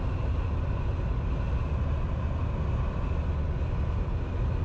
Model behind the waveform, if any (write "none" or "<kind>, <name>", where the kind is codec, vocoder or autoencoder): none